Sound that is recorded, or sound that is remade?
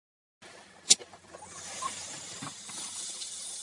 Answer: recorded